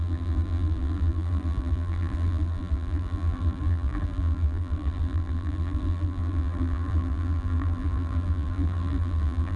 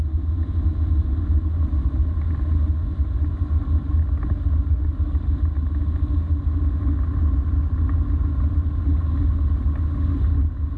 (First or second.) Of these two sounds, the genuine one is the second